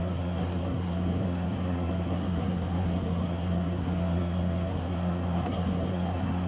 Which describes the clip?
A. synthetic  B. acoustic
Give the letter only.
A